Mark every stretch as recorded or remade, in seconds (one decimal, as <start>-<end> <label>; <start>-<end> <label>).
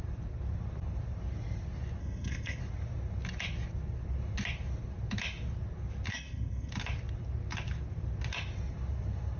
0.0-2.0 recorded; 2.0-2.6 remade; 2.6-6.1 recorded; 6.1-6.7 remade; 6.7-9.4 recorded